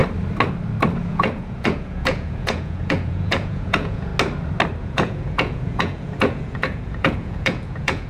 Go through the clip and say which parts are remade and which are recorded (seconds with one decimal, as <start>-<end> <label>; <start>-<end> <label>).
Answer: 0.0-1.1 recorded; 1.1-4.1 remade; 4.1-4.8 recorded; 4.8-8.1 remade